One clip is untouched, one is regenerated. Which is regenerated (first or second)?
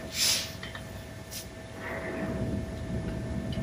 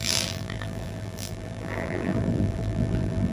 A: second